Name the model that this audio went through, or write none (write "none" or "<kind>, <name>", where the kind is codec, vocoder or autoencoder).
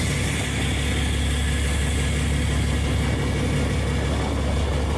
none